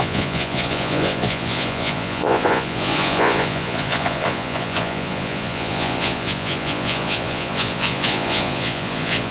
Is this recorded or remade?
remade